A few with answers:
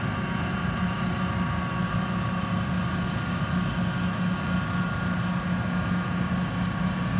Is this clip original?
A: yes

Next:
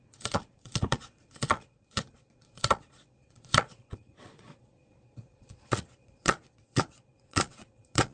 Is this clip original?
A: no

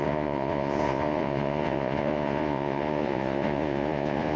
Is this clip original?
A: no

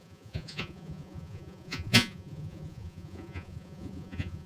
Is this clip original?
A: no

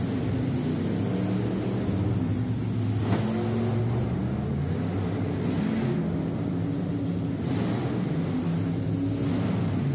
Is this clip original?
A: yes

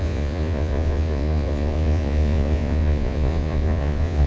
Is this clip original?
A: no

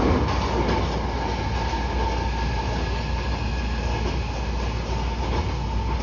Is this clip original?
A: yes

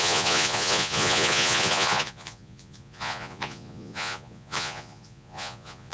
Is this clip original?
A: no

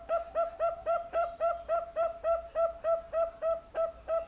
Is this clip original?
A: yes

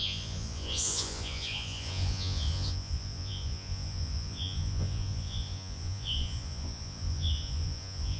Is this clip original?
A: no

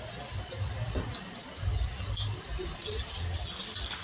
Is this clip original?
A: yes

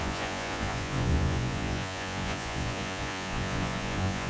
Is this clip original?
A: no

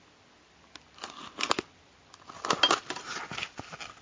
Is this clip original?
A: yes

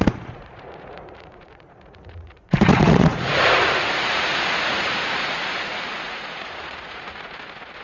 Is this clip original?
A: no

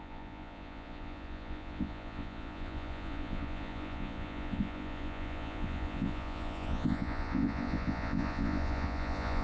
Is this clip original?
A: no